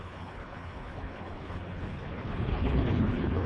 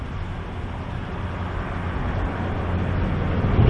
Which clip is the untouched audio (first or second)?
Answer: second